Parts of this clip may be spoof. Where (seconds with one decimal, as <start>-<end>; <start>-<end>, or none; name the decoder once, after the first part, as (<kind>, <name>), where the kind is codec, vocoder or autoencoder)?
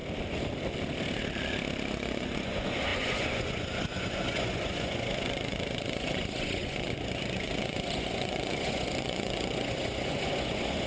1.9-10.9 (vocoder, Vocos)